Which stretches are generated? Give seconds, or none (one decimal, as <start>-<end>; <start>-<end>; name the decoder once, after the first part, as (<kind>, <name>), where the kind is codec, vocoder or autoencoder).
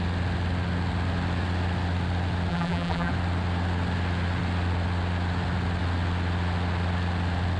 2.5-3.1 (vocoder, BigVGAN v2)